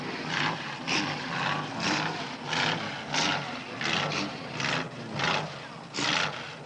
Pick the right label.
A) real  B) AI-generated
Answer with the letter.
A